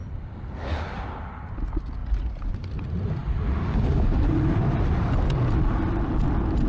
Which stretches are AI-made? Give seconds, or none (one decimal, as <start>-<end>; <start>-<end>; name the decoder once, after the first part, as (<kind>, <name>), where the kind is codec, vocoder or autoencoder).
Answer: 3.2-4.6 (vocoder, BigVGAN v2)